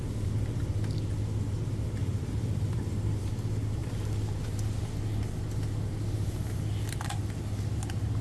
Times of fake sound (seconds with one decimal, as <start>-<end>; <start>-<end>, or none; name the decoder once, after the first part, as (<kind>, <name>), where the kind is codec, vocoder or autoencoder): 2.0-3.2 (vocoder, BigVGAN v2); 3.8-4.8